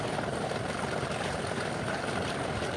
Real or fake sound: fake